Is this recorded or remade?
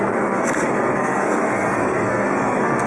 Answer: remade